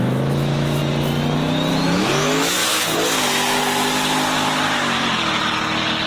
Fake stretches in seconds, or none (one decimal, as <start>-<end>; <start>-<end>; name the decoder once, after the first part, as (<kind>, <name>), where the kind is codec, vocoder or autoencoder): 0.0-0.8 (autoencoder, DAC-VAE); 1.7-2.6